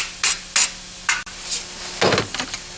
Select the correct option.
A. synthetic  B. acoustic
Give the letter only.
B